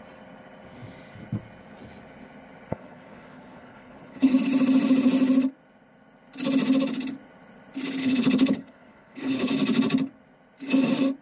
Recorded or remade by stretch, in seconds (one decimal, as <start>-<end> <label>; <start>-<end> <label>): 0.0-2.7 recorded; 2.7-4.3 remade; 4.3-8.0 recorded; 8.0-9.5 remade; 9.5-11.2 recorded